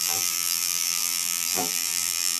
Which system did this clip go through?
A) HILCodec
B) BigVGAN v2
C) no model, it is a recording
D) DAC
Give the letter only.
B